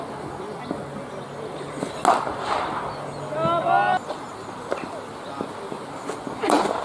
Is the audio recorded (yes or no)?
yes